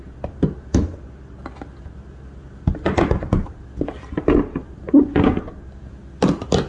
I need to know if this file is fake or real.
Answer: real